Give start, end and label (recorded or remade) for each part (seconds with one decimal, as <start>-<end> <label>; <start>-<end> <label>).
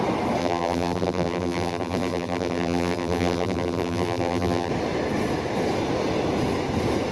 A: 0.0-0.4 recorded; 0.4-4.7 remade; 4.7-7.1 recorded